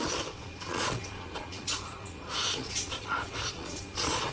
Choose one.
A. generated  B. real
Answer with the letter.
A